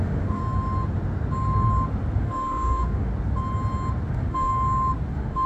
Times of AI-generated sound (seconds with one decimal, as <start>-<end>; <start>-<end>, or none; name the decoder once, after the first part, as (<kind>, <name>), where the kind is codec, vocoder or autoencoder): 0.0-0.4 (autoencoder, DAC-VAE); 2.2-3.1; 4.1-4.5; 5.1-5.5